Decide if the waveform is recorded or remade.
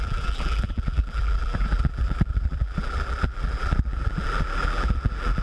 remade